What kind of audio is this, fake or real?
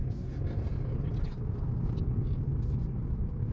real